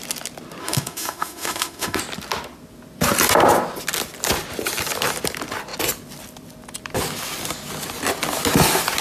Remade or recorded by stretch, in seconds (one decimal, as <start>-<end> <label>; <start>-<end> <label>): 0.0-0.6 recorded; 0.6-2.0 remade; 2.0-9.0 recorded